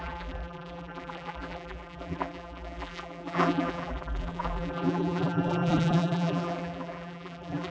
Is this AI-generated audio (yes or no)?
yes